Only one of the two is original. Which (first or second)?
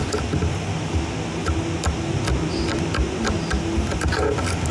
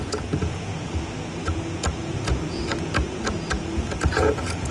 first